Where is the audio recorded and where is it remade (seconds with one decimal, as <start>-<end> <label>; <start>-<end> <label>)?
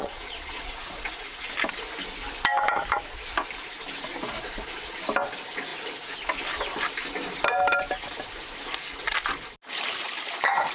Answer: 0.0-1.1 remade; 1.1-10.7 recorded